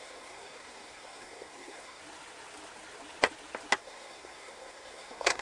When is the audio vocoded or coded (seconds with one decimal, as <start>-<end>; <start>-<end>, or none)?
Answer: 0.0-2.0; 3.8-5.4